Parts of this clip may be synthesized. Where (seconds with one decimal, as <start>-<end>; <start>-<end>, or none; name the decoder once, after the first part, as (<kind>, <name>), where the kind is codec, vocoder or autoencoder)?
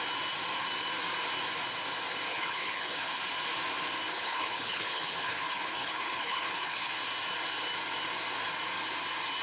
2.3-3.2 (codec, HILCodec); 4.1-6.9